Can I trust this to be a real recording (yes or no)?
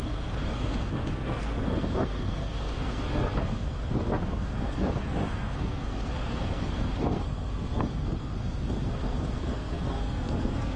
no